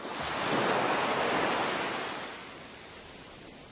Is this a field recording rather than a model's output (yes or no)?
yes